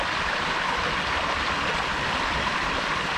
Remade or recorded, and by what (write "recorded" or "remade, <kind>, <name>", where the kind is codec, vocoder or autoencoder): recorded